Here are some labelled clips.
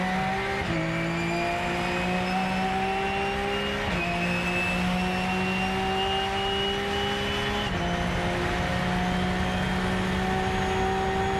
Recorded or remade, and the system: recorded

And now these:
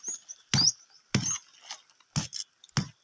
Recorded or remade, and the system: recorded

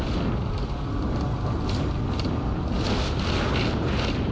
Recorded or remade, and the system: recorded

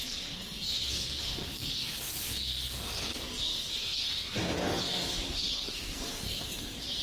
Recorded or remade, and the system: remade, codec, SNAC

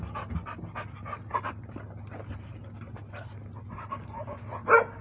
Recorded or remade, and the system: recorded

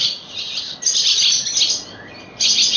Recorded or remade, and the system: recorded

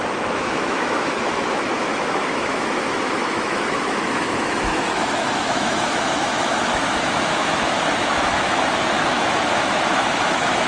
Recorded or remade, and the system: remade, autoencoder, DAC-VAE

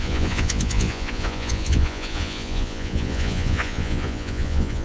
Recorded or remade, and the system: remade, vocoder, Vocos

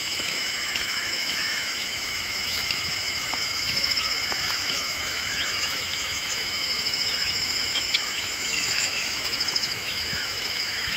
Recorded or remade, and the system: remade, autoencoder, DAC-VAE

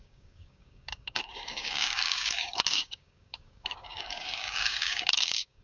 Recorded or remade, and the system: remade, codec, DAC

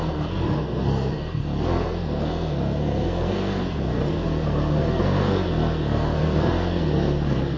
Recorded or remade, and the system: remade, codec, SNAC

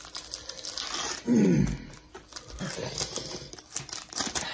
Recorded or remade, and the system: recorded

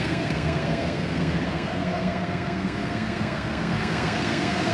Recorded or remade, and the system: remade, codec, SNAC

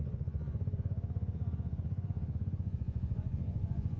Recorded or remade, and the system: remade, vocoder, Vocos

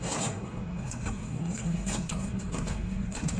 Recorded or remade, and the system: remade, codec, SNAC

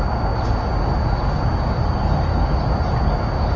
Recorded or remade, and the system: recorded